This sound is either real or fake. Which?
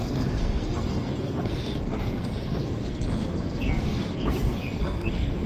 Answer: fake